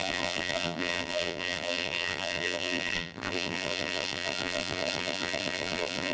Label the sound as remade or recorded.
remade